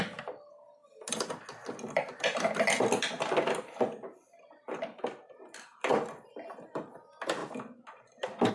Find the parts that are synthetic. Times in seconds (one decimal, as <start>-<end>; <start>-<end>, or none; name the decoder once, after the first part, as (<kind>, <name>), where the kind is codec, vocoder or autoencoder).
none